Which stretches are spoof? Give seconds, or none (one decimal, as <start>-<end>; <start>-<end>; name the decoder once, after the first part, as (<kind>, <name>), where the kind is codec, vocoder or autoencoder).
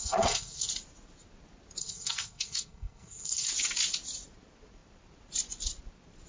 0.0-0.7 (codec, SNAC); 1.8-3.5